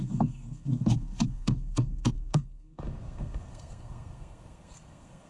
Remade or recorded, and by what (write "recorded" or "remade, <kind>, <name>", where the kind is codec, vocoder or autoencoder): remade, codec, SNAC